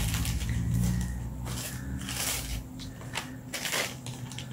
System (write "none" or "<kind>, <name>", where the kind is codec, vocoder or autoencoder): none